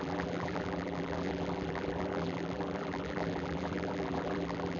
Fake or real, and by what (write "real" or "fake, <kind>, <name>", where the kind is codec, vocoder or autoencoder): fake, vocoder, BigVGAN v2